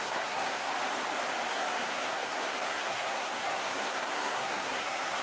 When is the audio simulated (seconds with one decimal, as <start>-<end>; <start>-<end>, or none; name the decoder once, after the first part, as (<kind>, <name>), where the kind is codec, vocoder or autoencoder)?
0.0-0.7 (codec, SNAC); 1.5-5.2